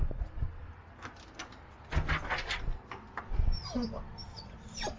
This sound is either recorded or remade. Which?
recorded